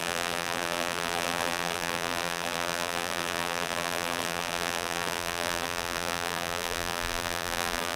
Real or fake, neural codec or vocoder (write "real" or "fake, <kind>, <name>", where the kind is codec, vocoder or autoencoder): fake, vocoder, BigVGAN v2